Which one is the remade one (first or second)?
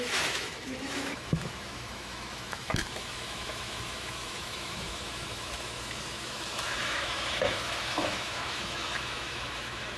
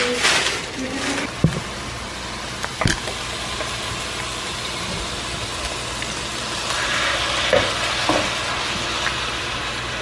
first